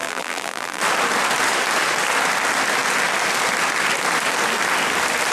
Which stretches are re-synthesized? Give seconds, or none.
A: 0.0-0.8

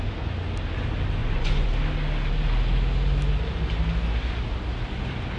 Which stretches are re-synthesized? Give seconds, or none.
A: 1.2-1.7

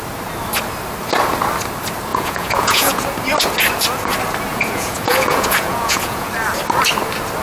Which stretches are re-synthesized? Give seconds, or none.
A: 2.1-3.0; 4.5-6.3

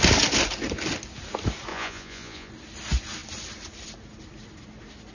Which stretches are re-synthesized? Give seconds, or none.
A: 1.7-2.5

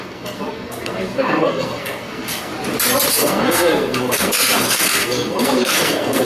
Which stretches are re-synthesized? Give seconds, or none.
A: 0.0-2.5; 3.1-6.2